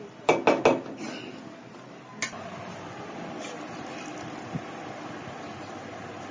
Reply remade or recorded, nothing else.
recorded